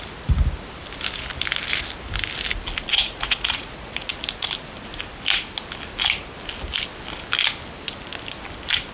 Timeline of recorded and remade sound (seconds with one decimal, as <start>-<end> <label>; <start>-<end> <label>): 0.0-2.9 recorded; 2.9-4.1 remade; 4.1-8.9 recorded

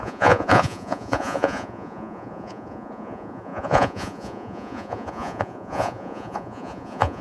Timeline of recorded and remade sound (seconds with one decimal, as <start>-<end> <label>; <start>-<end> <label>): 0.0-7.2 remade

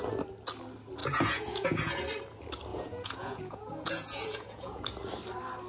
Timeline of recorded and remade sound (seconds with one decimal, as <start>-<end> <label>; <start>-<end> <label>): 0.0-1.0 recorded; 1.0-2.0 remade; 2.0-2.7 recorded; 2.7-4.8 remade; 4.8-5.7 recorded